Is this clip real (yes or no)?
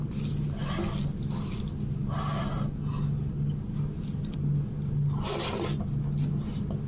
yes